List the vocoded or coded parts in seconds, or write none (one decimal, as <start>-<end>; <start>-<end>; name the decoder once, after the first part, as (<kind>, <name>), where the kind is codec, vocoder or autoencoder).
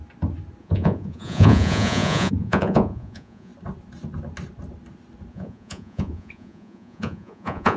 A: 0.6-3.5 (vocoder, Vocos); 5.3-7.8